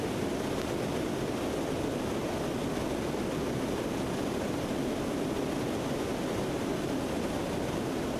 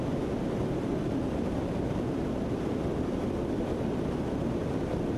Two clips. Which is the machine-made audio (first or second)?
second